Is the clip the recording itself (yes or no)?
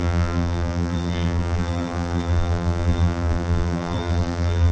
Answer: no